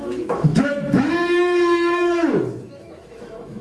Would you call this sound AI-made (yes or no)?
yes